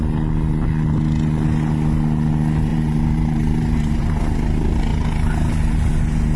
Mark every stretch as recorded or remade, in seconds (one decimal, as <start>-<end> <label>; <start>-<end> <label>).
0.0-2.7 recorded; 2.7-4.2 remade; 4.2-6.4 recorded